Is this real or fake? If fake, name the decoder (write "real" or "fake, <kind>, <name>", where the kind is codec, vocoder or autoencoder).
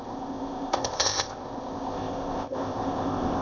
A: fake, codec, ZipCodec